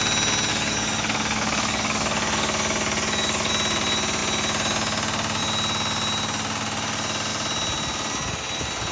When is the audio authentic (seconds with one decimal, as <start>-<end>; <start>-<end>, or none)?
0.0-0.5; 3.5-8.9

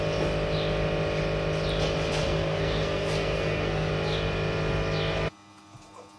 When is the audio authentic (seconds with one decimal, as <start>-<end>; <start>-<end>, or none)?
0.0-2.2; 3.9-6.2

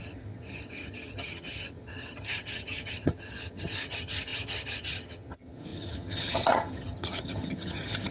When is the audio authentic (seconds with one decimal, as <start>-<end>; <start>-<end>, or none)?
none

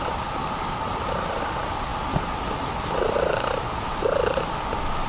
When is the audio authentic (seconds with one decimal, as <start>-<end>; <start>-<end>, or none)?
0.0-5.1

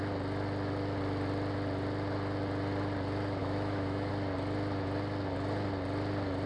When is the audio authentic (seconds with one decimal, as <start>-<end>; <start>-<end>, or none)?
0.0-3.4; 4.1-6.5